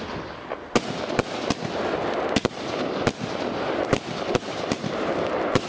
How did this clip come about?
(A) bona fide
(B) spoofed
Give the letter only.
A